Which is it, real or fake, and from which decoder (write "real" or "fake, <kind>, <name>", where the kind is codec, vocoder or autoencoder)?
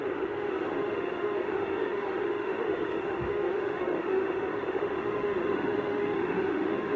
fake, autoencoder, DAC-VAE